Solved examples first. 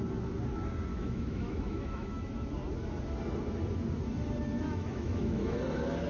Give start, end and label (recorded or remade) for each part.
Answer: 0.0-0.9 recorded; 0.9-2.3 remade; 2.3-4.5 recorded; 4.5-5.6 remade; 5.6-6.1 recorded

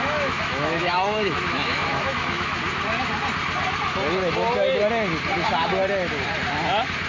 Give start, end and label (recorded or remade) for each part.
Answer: 0.0-2.6 remade; 2.6-7.1 recorded

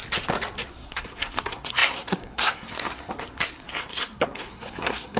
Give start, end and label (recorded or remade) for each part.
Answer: 0.0-0.7 recorded; 0.7-5.2 remade

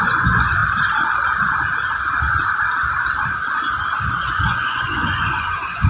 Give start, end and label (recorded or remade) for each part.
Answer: 0.0-0.6 remade; 0.6-4.1 recorded; 4.1-5.9 remade

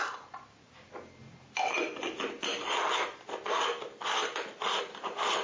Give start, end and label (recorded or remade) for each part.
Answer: 0.0-4.2 recorded; 4.2-4.8 remade; 4.8-5.4 recorded

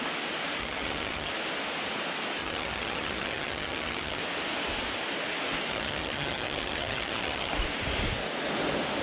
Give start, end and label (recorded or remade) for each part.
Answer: 0.0-0.6 recorded; 0.6-1.3 remade; 1.3-2.4 recorded; 2.4-4.2 remade; 4.2-5.7 recorded; 5.7-7.5 remade; 7.5-9.0 recorded